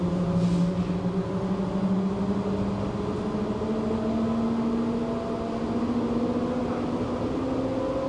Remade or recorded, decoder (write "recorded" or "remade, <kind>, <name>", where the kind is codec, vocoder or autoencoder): recorded